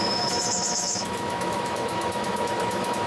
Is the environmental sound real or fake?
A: fake